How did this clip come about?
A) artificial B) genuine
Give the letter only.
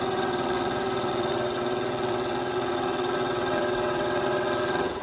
A